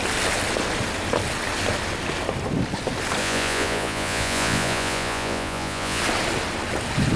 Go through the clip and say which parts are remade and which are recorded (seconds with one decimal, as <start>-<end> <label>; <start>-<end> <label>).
0.0-3.2 recorded; 3.2-6.0 remade; 6.0-7.2 recorded